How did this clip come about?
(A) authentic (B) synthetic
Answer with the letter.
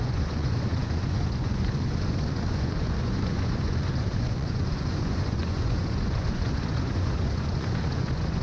B